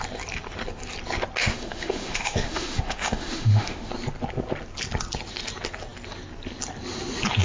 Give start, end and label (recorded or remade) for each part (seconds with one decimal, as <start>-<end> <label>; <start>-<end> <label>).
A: 0.0-1.4 recorded; 1.4-3.9 remade; 3.9-7.4 recorded